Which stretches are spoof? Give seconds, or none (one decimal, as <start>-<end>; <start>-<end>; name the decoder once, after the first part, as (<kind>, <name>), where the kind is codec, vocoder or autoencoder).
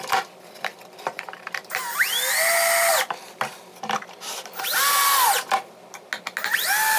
0.7-4.6 (vocoder, BigVGAN v2)